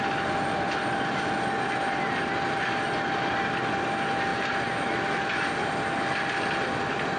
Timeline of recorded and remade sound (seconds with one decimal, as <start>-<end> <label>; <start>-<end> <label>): 0.0-7.2 recorded